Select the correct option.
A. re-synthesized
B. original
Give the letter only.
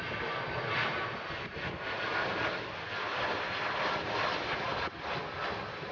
B